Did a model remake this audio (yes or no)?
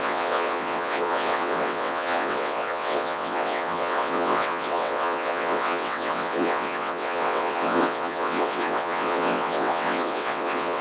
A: yes